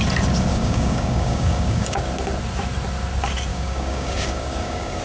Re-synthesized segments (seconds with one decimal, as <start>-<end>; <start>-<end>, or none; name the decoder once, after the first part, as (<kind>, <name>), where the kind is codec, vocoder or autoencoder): 0.5-2.0 (codec, DAC); 3.5-5.0